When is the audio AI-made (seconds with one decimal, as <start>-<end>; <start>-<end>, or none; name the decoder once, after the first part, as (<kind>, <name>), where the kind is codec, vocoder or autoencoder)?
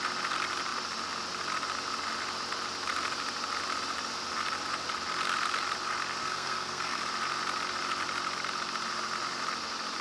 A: 6.2-7.0 (codec, SNAC)